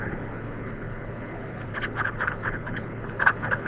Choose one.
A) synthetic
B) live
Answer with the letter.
A